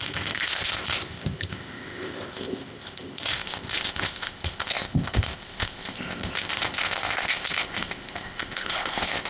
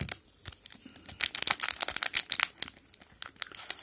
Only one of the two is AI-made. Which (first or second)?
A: first